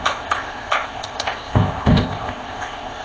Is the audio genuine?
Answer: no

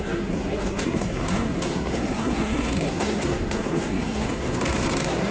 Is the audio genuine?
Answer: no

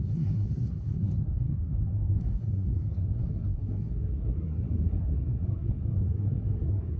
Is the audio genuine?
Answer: no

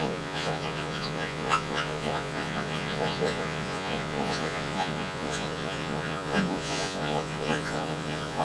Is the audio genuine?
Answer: no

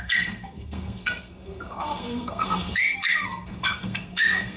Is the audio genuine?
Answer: no